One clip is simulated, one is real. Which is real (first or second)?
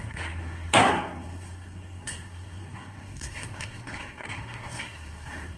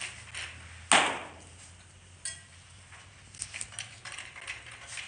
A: second